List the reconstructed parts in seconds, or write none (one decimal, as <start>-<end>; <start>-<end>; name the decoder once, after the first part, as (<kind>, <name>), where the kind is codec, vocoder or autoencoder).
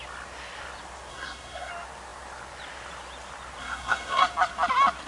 1.1-1.7 (codec, SNAC); 3.6-4.2